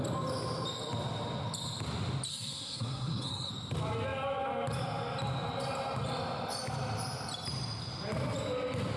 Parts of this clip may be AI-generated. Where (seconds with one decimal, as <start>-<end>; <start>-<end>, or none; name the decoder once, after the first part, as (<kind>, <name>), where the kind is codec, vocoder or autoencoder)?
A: 2.3-3.5 (codec, SNAC)